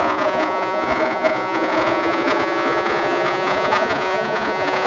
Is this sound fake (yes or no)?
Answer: yes